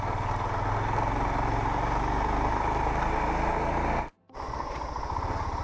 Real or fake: real